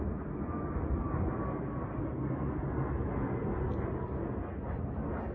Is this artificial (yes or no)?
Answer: no